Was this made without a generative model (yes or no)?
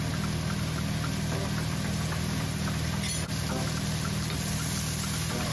yes